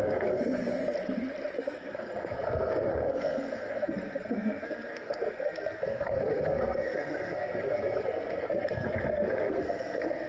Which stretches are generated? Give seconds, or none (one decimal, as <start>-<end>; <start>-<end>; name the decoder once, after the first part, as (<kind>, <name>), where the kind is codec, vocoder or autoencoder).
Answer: 0.0-0.8 (codec, SNAC); 1.6-10.3